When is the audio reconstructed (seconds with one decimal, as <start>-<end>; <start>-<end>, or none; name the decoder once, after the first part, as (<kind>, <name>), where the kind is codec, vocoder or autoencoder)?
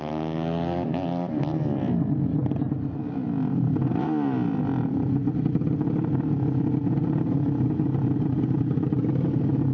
none